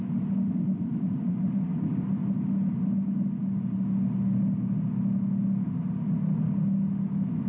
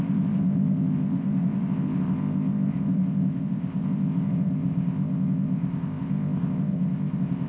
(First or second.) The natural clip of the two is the first